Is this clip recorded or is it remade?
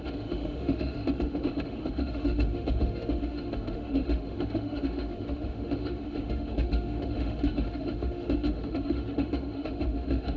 remade